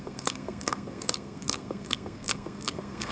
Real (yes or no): no